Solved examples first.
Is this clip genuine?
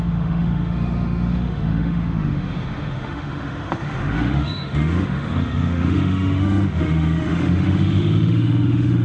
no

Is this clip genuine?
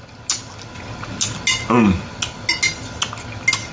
yes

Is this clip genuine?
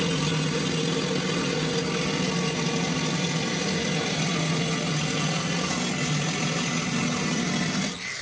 yes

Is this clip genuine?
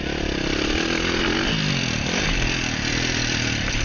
no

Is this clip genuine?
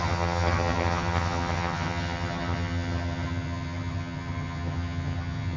no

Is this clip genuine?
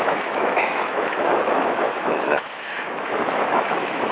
no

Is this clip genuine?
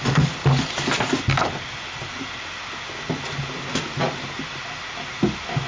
yes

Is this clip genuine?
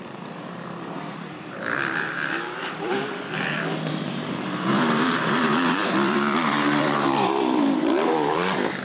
no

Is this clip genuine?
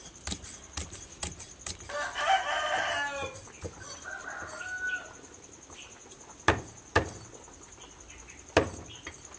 yes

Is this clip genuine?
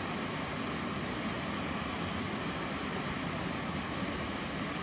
yes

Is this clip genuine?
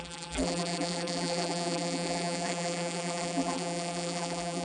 no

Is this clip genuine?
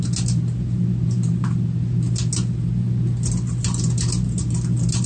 yes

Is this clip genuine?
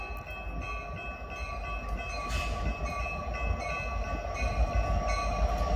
yes